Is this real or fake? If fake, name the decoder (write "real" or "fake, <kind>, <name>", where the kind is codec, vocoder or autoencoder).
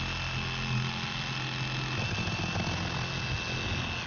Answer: real